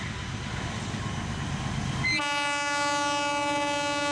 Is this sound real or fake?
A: real